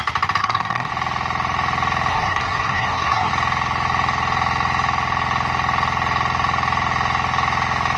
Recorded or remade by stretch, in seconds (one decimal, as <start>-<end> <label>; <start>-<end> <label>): 0.0-0.4 recorded; 0.4-0.9 remade; 0.9-2.1 recorded; 2.1-3.3 remade; 3.3-8.0 recorded